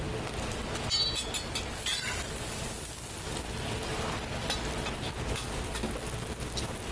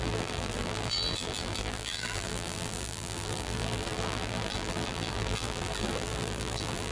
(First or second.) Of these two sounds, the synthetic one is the second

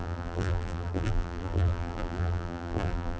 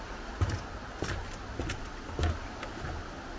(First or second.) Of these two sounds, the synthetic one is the first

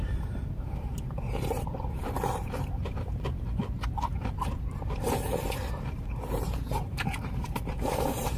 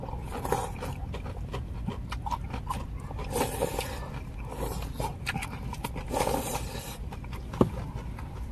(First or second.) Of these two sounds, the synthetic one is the first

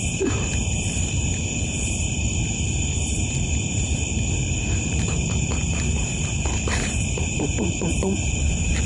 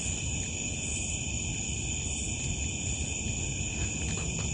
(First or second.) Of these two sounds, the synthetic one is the first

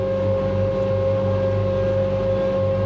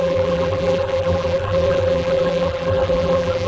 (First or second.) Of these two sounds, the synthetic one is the second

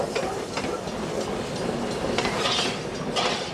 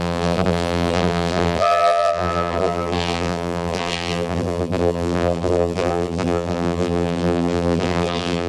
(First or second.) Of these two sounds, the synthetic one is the second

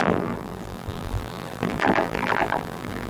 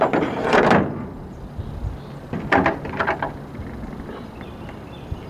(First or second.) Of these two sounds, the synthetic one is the first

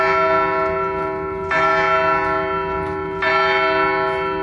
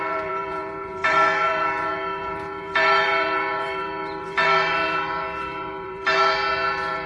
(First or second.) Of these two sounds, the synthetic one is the second